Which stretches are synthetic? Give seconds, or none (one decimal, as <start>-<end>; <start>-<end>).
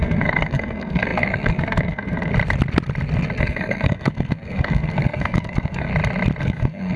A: 0.0-2.3; 3.4-5.9; 6.4-7.0